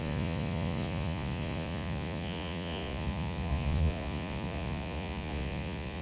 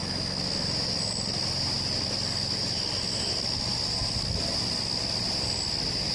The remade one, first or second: first